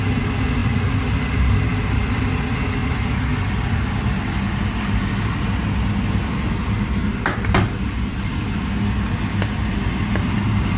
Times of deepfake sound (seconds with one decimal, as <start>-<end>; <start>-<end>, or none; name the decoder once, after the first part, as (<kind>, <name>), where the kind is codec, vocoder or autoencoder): 0.6-2.2 (vocoder, BigVGAN v2); 2.8-5.0; 7.0-8.7